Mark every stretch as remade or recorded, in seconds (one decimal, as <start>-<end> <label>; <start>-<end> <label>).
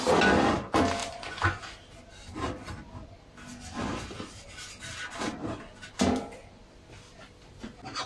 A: 0.0-1.0 recorded; 1.0-1.6 remade; 1.6-8.1 recorded